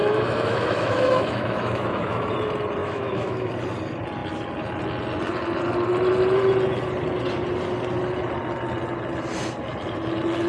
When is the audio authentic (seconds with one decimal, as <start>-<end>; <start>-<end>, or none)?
2.3-2.8; 3.5-10.5

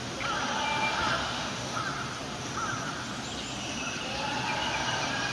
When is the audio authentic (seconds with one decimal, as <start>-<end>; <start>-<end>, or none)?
0.0-1.2; 1.8-5.3

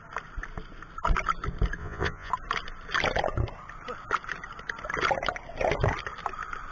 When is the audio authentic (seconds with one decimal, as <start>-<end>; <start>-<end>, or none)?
0.0-1.8; 2.3-6.7

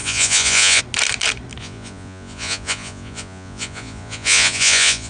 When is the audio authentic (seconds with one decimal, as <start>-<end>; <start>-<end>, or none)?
0.8-1.6

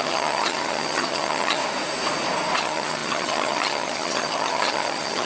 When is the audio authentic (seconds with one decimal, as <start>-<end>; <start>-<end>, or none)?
1.6-2.6